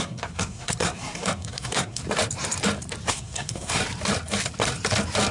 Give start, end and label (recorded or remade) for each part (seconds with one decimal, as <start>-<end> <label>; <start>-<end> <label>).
0.0-2.0 remade; 2.0-3.1 recorded; 3.1-3.8 remade; 3.8-5.3 recorded